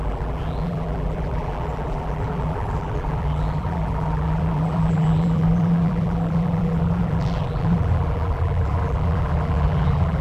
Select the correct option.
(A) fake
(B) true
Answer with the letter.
A